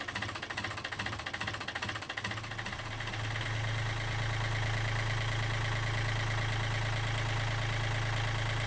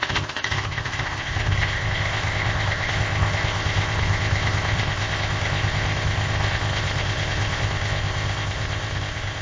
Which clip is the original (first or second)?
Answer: first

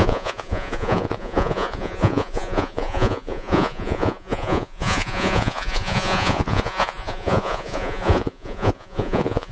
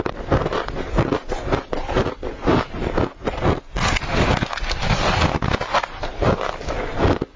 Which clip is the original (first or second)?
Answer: second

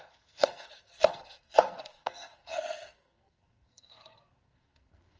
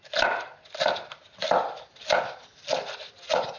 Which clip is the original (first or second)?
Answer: second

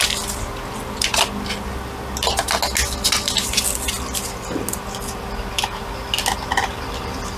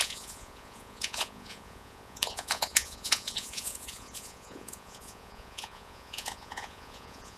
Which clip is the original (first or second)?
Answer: first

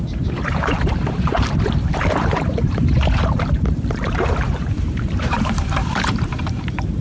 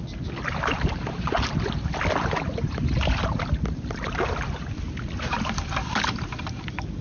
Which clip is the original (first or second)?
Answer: second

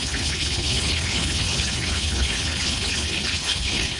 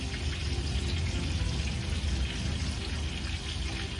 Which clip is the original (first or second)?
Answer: second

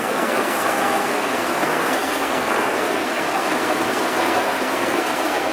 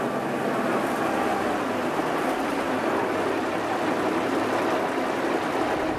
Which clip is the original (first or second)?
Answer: second